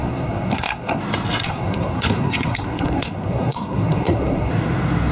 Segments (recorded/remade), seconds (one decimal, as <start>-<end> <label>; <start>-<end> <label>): 0.0-1.0 remade; 1.0-1.5 recorded; 1.5-4.5 remade; 4.5-5.1 recorded